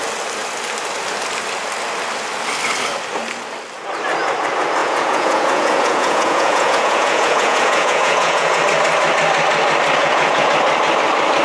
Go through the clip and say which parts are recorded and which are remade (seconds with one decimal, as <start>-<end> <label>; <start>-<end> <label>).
0.0-4.8 recorded; 4.8-8.6 remade; 8.6-10.0 recorded; 10.0-10.5 remade; 10.5-11.4 recorded